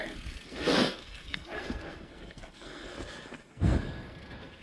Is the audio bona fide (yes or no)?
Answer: no